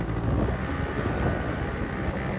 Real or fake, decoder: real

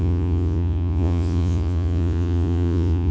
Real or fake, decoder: fake, vocoder, Vocos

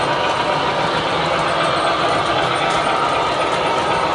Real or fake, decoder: real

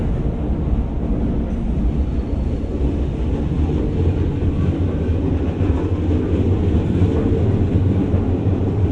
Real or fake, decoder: real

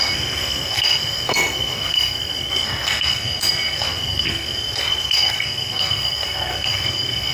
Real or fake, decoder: fake, codec, SNAC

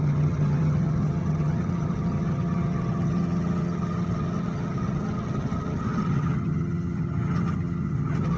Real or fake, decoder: fake, vocoder, HiFi-GAN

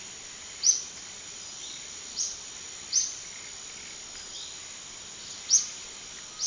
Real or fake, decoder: real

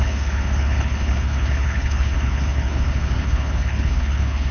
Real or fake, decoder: fake, codec, HILCodec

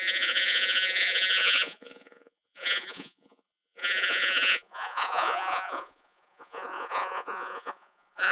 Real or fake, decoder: fake, vocoder, Vocos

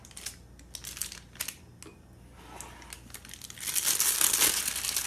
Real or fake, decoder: real